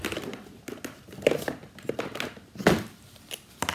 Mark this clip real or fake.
real